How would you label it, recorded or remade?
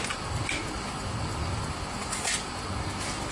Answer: recorded